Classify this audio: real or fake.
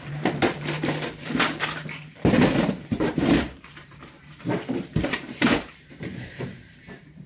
fake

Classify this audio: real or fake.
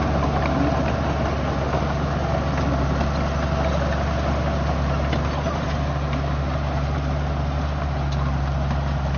real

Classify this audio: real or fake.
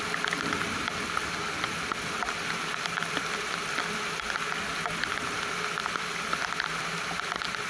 real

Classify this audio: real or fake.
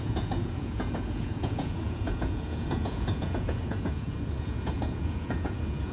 fake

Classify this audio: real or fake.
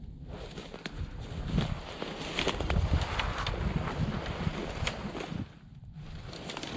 real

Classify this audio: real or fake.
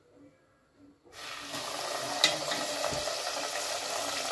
real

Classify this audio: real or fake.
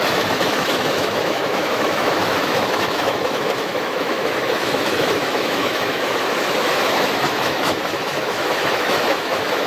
fake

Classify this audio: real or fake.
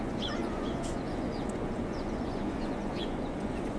fake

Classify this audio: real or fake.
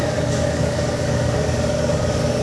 fake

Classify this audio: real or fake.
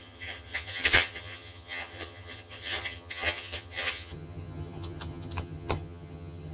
fake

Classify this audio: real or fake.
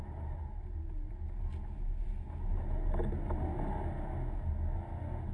real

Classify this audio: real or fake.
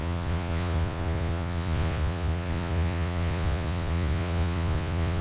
fake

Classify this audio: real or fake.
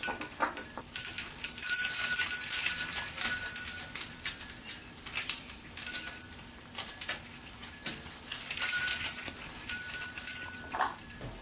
fake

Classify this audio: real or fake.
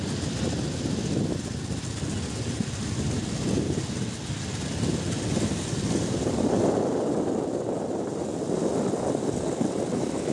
real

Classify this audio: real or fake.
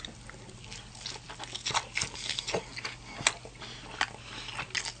real